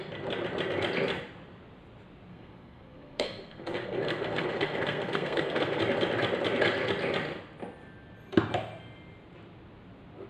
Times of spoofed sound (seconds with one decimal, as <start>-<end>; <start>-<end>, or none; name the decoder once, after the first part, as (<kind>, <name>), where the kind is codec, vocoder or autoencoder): 2.3-5.8 (codec, SNAC)